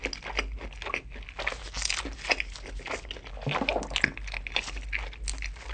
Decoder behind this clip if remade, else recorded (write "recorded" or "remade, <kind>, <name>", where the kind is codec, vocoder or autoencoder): recorded